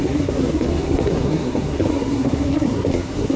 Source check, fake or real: fake